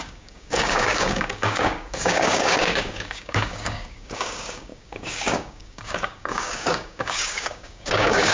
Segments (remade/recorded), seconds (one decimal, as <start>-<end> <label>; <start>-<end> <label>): 0.0-8.3 remade

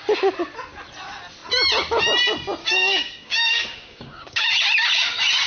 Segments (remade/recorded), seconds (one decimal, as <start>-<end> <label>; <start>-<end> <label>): 0.0-2.6 recorded; 2.6-4.5 remade; 4.5-5.5 recorded

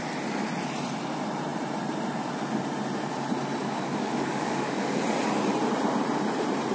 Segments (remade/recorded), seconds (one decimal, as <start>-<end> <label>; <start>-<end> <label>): 0.0-3.6 recorded; 3.6-5.0 remade; 5.0-6.7 recorded

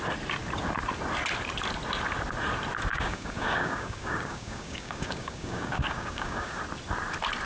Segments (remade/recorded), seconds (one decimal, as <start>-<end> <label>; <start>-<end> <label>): 0.0-2.9 recorded; 2.9-6.6 remade; 6.6-7.5 recorded

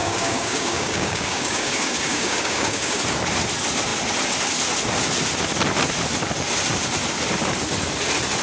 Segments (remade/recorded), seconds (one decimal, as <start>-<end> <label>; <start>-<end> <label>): 0.0-3.0 remade; 3.0-8.4 recorded

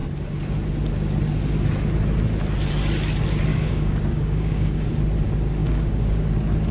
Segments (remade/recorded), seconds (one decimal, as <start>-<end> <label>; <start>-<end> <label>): 0.0-3.5 recorded; 3.5-5.0 remade; 5.0-5.6 recorded; 5.6-6.2 remade; 6.2-6.7 recorded